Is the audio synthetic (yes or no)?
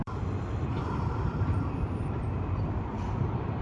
yes